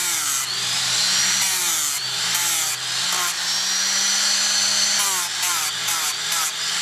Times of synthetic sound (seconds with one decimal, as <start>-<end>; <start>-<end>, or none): none